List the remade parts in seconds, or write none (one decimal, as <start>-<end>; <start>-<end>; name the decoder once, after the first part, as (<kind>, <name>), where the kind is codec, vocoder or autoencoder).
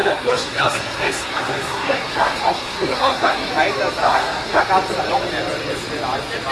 0.0-3.5 (codec, SNAC); 4.0-4.6